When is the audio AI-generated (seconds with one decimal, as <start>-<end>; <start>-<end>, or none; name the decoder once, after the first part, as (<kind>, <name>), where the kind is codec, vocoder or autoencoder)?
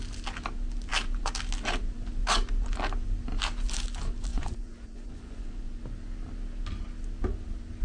4.3-5.8 (vocoder, Vocos)